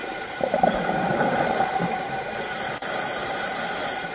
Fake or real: fake